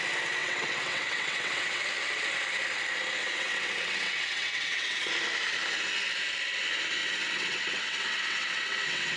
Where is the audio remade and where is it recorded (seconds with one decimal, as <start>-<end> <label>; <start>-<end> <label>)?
0.0-0.4 recorded; 0.4-1.8 remade; 1.8-3.2 recorded; 3.2-5.1 remade; 5.1-7.0 recorded; 7.0-9.2 remade